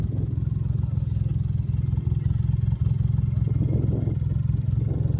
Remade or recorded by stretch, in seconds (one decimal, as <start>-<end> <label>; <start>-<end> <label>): 0.0-5.2 recorded